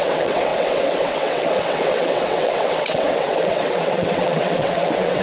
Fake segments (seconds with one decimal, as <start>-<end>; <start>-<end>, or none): 0.0-5.2